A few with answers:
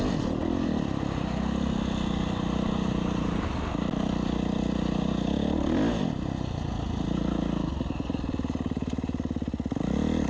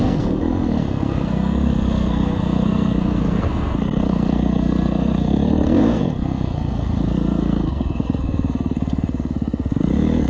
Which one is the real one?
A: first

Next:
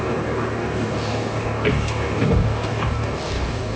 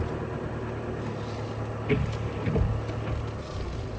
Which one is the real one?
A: second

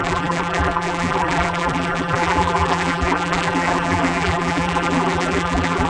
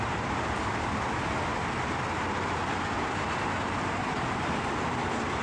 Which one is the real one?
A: second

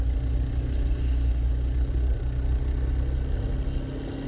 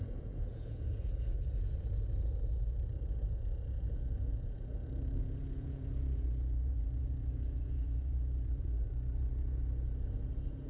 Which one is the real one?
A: first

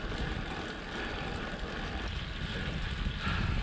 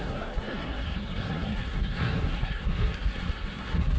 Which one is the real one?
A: first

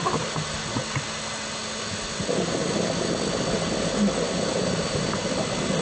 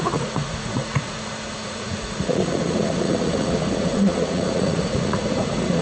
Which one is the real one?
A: first